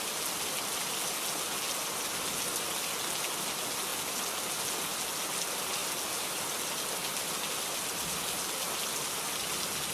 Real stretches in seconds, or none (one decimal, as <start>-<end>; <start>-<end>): 0.0-9.9